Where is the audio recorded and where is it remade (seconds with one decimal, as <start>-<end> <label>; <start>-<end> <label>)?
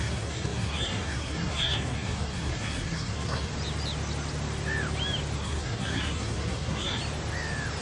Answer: 0.0-3.5 remade; 3.5-5.4 recorded; 5.4-7.0 remade; 7.0-7.8 recorded